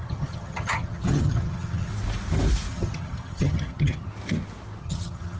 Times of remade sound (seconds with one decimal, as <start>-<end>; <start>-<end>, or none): 0.0-1.9; 2.7-4.1; 4.8-5.4